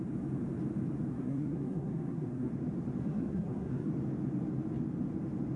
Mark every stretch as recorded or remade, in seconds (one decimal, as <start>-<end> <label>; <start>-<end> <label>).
0.0-1.1 recorded; 1.1-2.5 remade; 2.5-3.0 recorded; 3.0-3.9 remade; 3.9-5.6 recorded